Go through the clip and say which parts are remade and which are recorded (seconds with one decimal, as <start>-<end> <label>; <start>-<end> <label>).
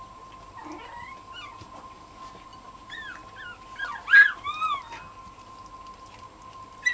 0.0-6.9 recorded